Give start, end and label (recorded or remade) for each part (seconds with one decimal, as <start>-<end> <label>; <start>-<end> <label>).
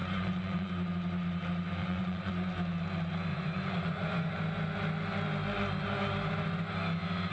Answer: 0.0-0.7 remade; 0.7-1.8 recorded; 1.8-2.3 remade; 2.3-3.3 recorded; 3.3-4.3 remade; 4.3-7.3 recorded